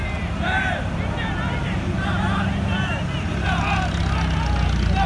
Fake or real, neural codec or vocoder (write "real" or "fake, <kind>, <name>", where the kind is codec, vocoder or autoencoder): real